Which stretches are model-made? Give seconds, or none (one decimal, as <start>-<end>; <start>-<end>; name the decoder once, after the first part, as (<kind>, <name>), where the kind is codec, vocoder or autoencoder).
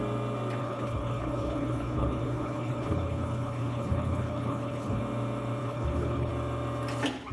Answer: 0.6-5.0 (codec, HILCodec); 5.6-6.3